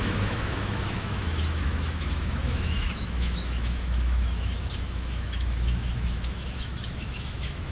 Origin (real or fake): fake